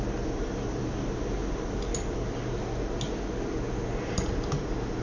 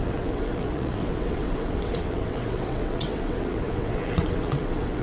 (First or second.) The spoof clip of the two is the second